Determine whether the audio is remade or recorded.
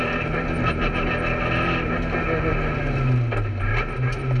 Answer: recorded